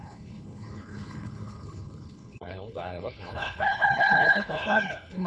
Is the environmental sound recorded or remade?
remade